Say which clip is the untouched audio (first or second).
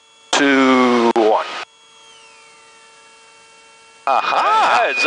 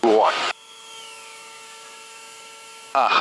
first